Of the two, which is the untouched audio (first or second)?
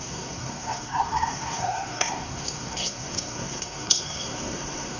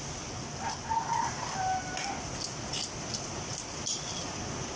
second